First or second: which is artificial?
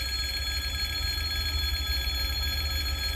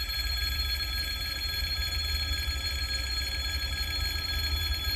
second